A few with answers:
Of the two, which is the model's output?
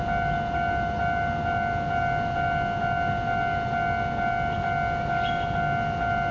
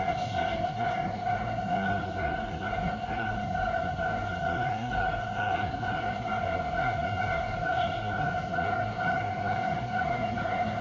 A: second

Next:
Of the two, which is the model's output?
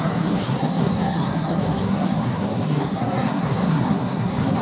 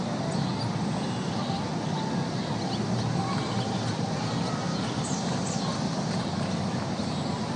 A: first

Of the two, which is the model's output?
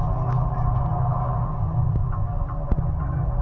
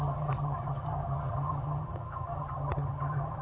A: second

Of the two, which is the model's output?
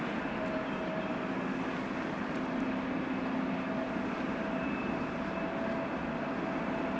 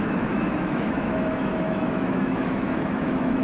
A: second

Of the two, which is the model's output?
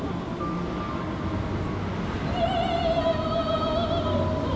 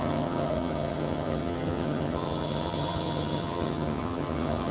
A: second